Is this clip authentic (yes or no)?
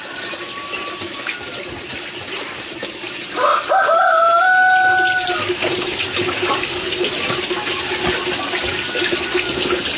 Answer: yes